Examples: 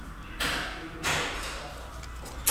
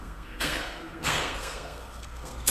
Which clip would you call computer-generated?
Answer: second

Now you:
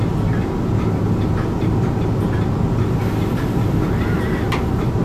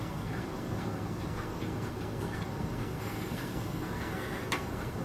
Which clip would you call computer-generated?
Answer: second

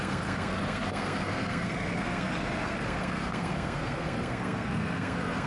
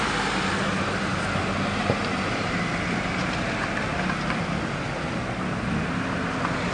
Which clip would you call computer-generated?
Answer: first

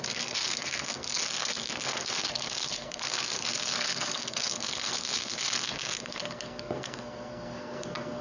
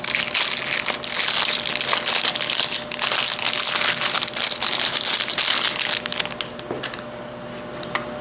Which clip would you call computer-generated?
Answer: first